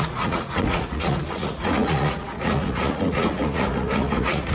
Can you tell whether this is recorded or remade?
remade